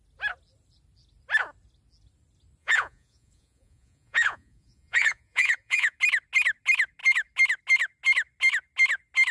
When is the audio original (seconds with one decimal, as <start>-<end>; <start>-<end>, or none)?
0.0-2.6; 6.0-9.3